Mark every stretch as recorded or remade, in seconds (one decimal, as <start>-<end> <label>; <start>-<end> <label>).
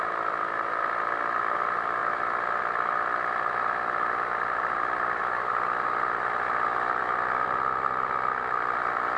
0.0-2.0 remade; 2.0-2.6 recorded; 2.6-9.2 remade